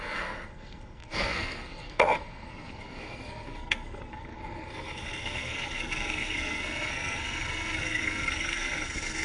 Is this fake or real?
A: fake